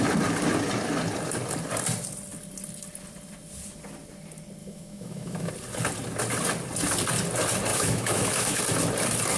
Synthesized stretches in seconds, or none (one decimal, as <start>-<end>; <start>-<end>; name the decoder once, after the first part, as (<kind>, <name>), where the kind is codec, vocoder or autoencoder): 4.6-5.5 (autoencoder, DAC-VAE); 7.7-8.6